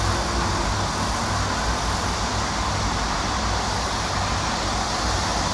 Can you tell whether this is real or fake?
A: real